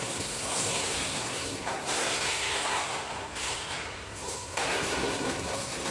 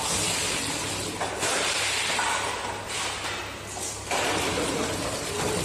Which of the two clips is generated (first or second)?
first